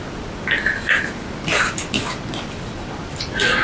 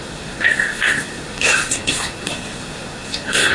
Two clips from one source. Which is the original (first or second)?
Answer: first